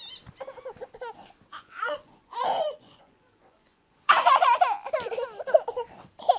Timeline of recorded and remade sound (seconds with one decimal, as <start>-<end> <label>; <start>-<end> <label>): 0.0-1.5 recorded; 1.5-4.6 remade; 4.6-6.4 recorded